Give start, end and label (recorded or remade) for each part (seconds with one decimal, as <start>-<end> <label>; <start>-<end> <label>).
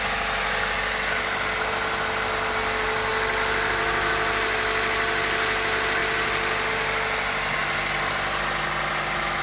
0.0-9.4 recorded